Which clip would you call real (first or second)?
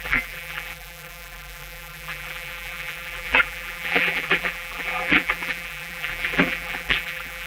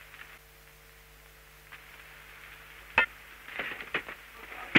second